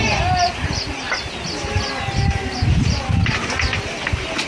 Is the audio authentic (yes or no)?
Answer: yes